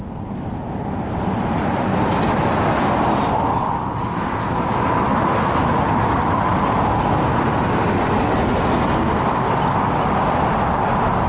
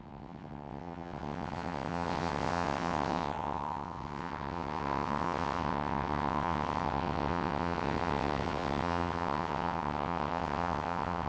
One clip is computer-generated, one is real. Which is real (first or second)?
first